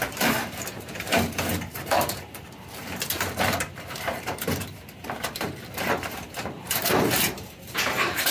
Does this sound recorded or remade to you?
remade